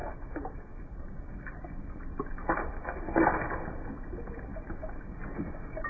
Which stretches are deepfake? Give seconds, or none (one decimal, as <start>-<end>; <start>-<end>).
0.0-0.7; 4.5-5.0